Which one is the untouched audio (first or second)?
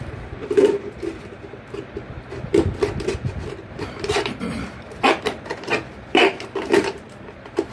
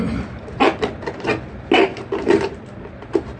second